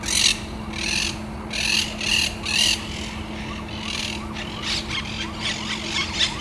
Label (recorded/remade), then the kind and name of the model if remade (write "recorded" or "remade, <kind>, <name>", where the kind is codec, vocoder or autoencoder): recorded